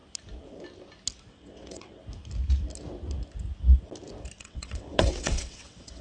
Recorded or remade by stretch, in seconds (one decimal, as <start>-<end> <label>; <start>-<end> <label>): 0.0-1.3 recorded; 1.3-2.0 remade; 2.0-4.4 recorded; 4.4-6.0 remade